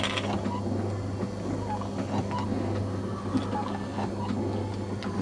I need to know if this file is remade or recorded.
recorded